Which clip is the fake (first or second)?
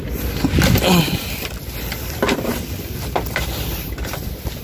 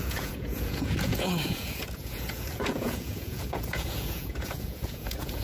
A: second